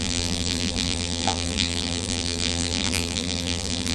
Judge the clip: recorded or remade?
remade